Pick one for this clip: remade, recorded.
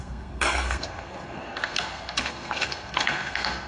remade